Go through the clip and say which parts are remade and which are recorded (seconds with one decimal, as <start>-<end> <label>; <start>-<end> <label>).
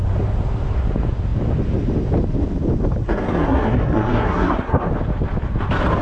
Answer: 0.0-3.0 recorded; 3.0-4.9 remade; 4.9-6.0 recorded